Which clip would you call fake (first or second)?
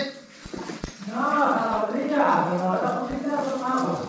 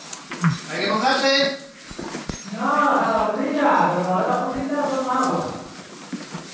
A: first